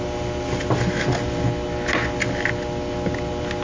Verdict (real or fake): real